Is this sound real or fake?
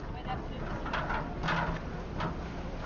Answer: real